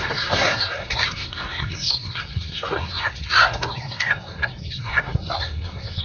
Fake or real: fake